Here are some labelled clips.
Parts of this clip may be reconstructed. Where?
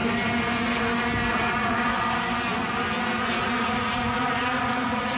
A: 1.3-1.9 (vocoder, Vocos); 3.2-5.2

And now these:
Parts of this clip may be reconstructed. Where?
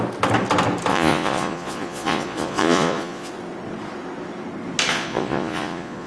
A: 0.9-3.3 (vocoder, Vocos); 4.9-6.1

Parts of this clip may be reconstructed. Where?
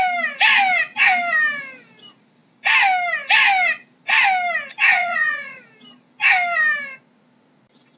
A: 4.9-5.6 (vocoder, Vocos)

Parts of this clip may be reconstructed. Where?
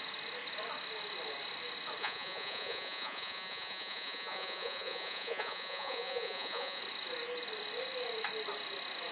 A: 2.0-6.8 (vocoder, Vocos)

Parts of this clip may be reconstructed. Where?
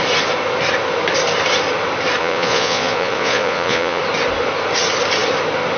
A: 2.2-4.0 (vocoder, Vocos)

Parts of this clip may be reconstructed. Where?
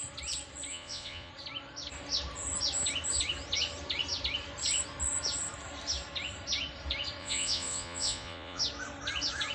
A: 0.7-1.3 (vocoder, Vocos); 7.2-8.6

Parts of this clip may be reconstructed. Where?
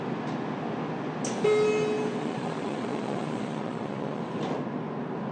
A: 2.2-4.2 (vocoder, Vocos)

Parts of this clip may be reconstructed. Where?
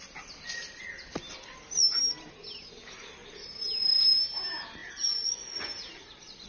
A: 4.8-6.5 (vocoder, Vocos)